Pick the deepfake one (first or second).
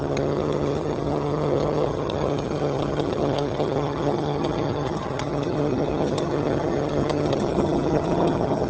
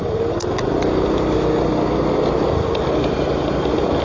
first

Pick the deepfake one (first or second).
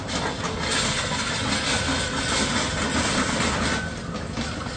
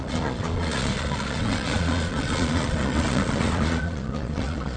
second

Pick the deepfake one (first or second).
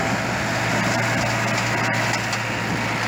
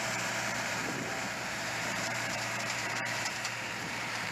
second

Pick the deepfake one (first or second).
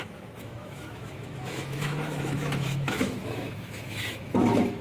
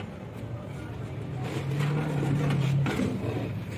first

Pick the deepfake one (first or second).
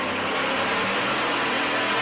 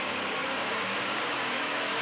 second